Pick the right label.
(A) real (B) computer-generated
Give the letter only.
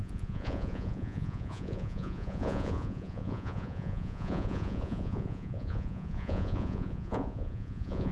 B